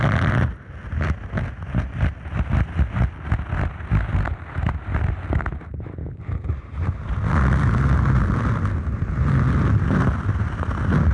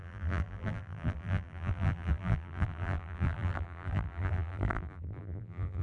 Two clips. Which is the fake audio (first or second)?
second